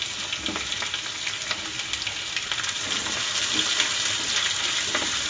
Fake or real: real